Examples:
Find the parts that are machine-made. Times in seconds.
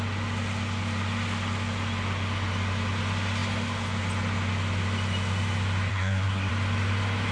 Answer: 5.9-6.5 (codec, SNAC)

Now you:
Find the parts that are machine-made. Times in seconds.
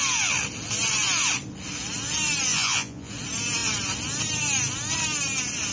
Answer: 2.5-3.1 (vocoder, Vocos)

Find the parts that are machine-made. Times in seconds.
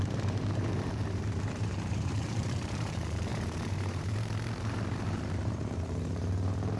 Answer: 0.0-6.8 (vocoder, BigVGAN v2)